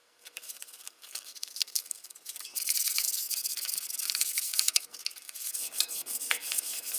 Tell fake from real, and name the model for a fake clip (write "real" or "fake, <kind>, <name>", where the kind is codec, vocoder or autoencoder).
fake, codec, SNAC